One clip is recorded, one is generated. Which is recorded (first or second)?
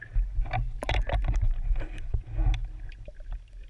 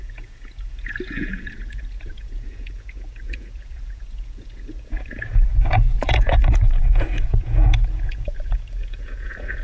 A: first